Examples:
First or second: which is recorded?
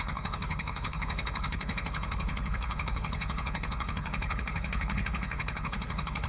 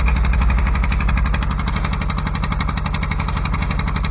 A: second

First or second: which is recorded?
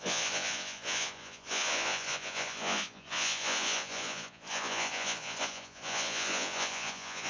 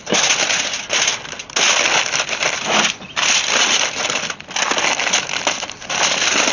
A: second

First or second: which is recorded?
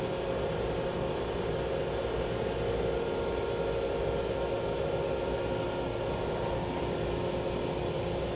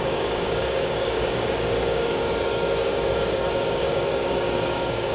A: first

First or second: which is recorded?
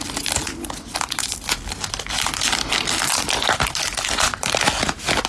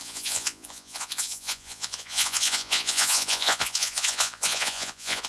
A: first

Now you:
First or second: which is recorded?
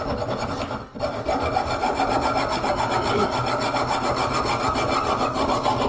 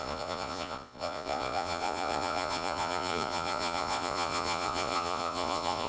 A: first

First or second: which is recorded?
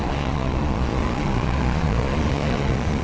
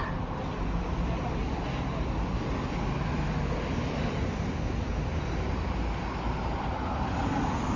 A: second